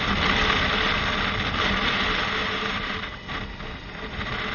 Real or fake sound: real